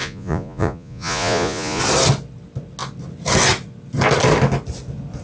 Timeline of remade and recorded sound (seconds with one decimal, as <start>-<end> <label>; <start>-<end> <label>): 0.0-1.8 remade; 1.8-5.2 recorded